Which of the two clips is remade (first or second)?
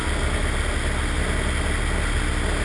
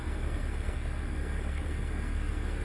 second